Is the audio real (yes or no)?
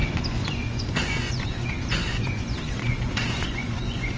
no